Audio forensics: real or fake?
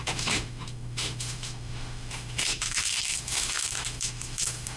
fake